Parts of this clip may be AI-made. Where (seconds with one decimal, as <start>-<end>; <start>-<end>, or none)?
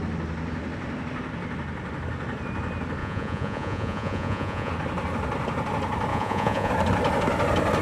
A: 3.0-4.7; 6.1-6.7